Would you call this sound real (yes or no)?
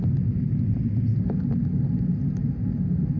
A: yes